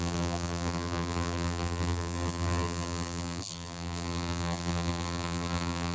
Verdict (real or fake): fake